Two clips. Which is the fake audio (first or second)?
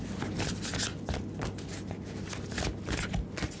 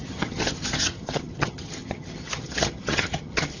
second